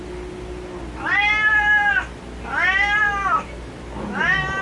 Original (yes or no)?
yes